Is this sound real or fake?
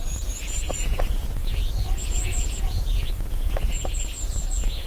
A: fake